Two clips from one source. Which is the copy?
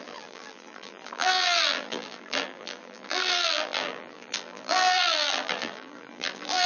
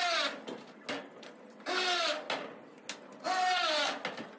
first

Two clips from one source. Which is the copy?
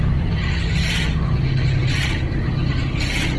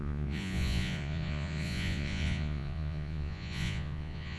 second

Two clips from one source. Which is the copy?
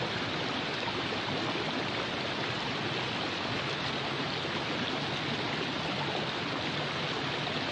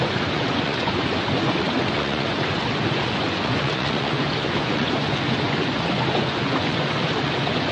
second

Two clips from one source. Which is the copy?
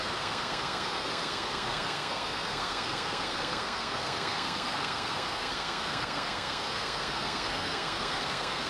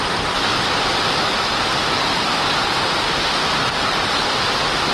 first